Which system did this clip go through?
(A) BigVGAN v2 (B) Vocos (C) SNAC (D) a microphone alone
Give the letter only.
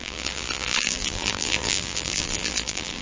A